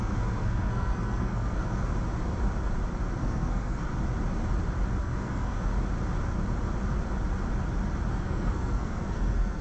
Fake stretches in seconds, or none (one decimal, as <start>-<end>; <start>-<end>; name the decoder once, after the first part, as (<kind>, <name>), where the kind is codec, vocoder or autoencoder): 0.0-1.9 (codec, SNAC); 3.2-3.9; 5.0-5.7; 8.1-9.6

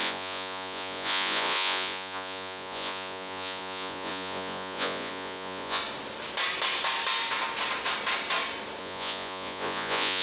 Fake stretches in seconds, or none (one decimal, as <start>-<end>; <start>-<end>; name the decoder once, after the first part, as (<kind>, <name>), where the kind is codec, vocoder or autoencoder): 0.0-5.8 (vocoder, Vocos); 8.8-10.2

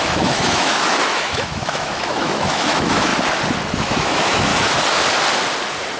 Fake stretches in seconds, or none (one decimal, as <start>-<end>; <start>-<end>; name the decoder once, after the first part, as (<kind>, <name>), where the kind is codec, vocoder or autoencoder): 0.0-3.1 (autoencoder, DAC-VAE); 3.8-4.5

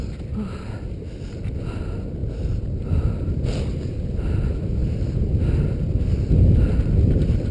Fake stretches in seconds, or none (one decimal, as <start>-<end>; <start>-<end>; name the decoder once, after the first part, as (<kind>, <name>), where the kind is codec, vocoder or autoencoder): none

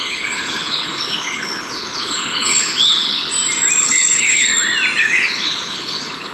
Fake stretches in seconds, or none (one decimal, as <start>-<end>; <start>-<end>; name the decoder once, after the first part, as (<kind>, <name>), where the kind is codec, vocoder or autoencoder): 0.0-3.3 (codec, HILCodec); 3.8-4.5; 5.0-6.3

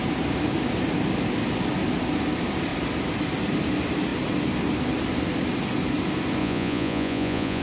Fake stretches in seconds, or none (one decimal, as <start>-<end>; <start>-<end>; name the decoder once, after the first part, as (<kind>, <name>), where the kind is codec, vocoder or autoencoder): 6.4-7.6 (vocoder, Vocos)

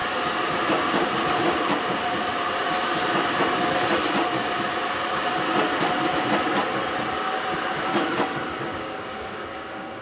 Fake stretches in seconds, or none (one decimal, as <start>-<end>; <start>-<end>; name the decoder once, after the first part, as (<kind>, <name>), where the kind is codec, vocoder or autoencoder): 8.6-10.0 (codec, DAC)